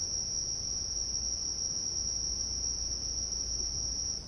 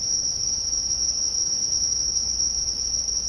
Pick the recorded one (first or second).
first